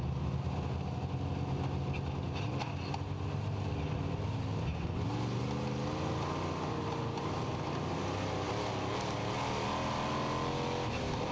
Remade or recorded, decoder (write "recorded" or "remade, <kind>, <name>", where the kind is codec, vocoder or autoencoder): recorded